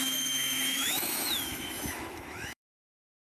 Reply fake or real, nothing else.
fake